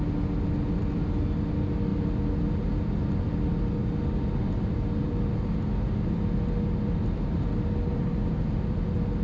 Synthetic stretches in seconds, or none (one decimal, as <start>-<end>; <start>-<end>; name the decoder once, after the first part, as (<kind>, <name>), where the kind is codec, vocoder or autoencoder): none